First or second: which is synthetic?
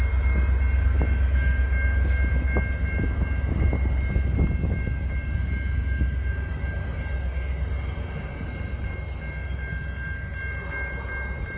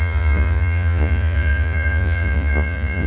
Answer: second